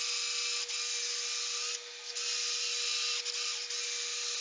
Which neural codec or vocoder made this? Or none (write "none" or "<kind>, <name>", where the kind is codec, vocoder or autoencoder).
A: none